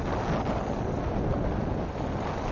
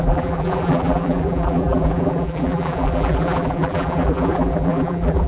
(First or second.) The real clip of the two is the first